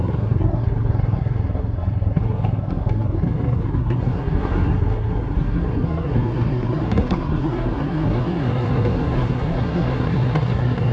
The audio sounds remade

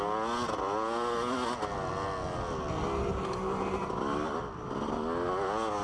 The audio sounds recorded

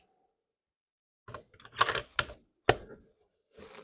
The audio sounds recorded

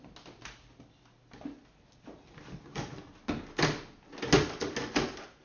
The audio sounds recorded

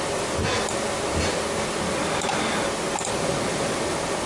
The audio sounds recorded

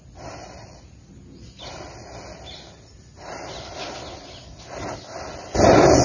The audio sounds recorded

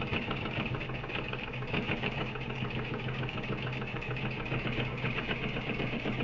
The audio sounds remade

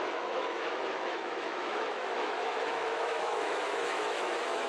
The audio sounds remade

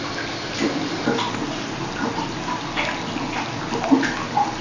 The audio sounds recorded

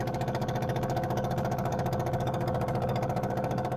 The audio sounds remade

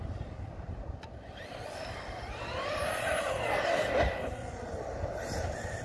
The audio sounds recorded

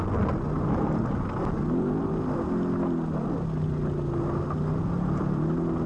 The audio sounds recorded